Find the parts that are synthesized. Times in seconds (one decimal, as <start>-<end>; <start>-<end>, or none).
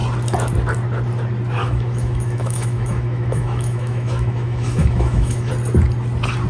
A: 1.6-5.5